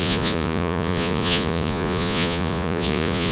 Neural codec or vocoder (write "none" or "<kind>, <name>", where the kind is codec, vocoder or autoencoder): vocoder, Vocos